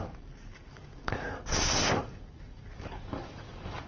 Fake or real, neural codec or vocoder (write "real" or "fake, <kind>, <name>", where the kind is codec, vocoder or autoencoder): fake, codec, DAC